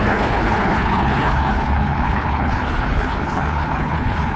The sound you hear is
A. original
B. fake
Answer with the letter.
B